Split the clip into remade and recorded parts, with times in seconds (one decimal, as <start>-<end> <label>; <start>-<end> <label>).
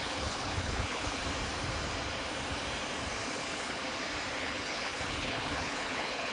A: 0.0-1.2 remade; 1.2-3.3 recorded; 3.3-3.8 remade; 3.8-4.4 recorded; 4.4-6.3 remade